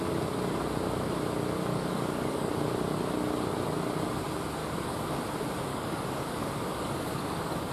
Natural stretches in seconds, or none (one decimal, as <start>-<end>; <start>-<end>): 0.0-1.7; 2.5-4.6; 5.2-5.7